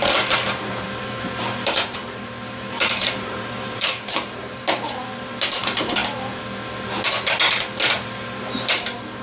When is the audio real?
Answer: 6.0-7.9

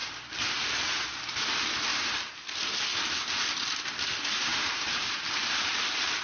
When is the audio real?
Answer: 1.0-4.5

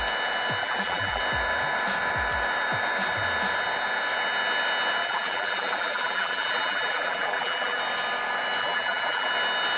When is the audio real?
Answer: 0.0-0.6; 1.2-5.0; 7.8-8.6; 9.3-9.8

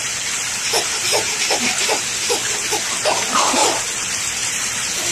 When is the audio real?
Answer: 2.4-3.9

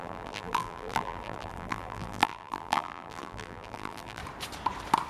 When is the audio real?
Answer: 4.2-5.1

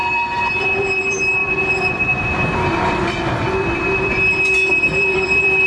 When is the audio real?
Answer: none

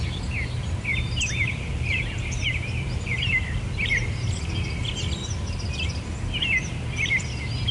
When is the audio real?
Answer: 0.0-0.9; 5.1-7.7

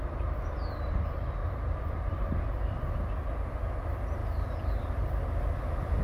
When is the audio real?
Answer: 0.0-1.4; 2.4-6.0